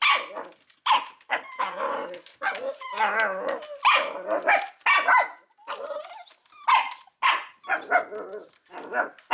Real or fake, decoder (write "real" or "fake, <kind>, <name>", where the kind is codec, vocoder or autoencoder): real